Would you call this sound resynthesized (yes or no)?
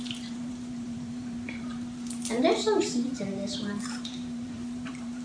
yes